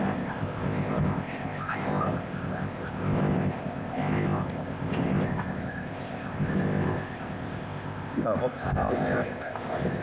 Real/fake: fake